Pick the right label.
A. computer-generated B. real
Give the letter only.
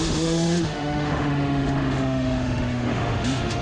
A